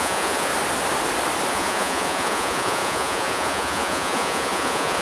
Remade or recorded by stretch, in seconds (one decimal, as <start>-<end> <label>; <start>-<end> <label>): 0.0-0.5 remade; 0.5-1.5 recorded; 1.5-5.0 remade